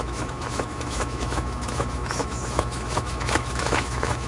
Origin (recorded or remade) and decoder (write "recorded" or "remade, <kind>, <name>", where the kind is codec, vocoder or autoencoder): remade, autoencoder, DAC-VAE